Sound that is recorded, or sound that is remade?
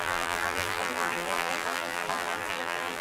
remade